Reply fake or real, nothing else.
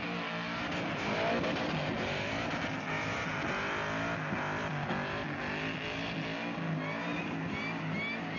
real